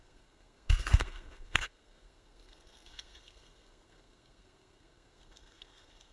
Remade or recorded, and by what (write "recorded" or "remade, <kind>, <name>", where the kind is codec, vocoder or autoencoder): remade, codec, SNAC